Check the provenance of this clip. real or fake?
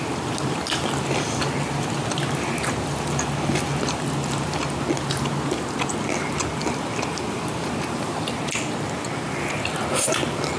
real